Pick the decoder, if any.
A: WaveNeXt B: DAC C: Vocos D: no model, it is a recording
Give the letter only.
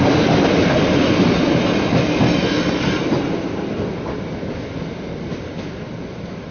D